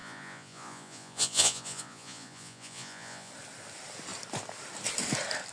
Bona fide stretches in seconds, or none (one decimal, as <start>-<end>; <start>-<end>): 3.3-5.5